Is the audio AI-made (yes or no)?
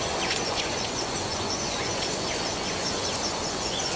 yes